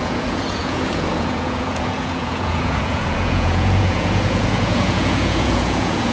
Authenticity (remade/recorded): remade